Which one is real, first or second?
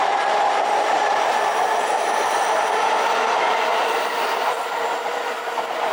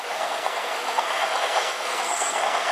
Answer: first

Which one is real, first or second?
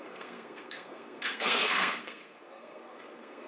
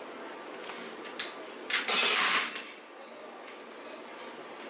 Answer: second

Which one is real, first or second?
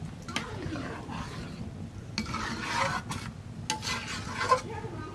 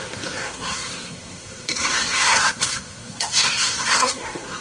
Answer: first